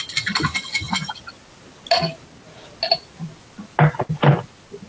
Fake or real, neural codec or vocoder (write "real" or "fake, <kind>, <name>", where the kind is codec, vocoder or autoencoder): real